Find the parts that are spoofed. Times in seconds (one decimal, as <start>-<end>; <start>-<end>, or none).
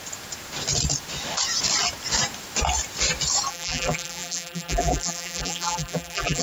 3.5-6.4